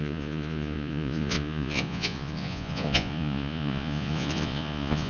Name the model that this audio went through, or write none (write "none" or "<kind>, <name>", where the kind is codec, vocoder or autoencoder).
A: vocoder, Vocos